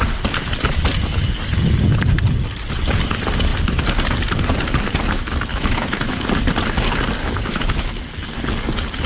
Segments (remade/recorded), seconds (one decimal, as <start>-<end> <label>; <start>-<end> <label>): 0.0-5.5 recorded; 5.5-6.3 remade; 6.3-7.2 recorded; 7.2-7.9 remade; 7.9-9.1 recorded

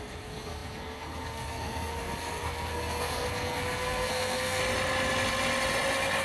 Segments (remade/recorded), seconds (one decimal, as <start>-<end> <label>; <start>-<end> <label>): 0.0-4.6 remade; 4.6-6.2 recorded

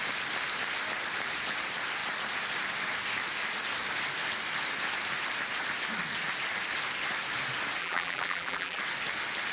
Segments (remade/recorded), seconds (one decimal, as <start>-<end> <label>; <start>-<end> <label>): 0.0-7.8 recorded; 7.8-8.8 remade; 8.8-9.5 recorded

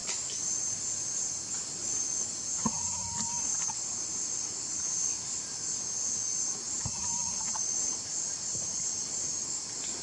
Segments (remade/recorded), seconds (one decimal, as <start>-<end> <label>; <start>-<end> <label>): 0.0-10.0 recorded

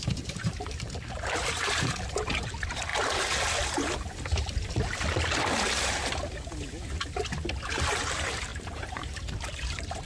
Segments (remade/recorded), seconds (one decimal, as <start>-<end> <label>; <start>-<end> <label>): 0.0-2.9 remade; 2.9-7.6 recorded; 7.6-10.1 remade